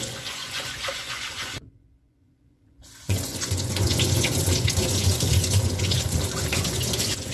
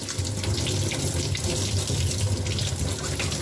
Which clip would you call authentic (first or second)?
second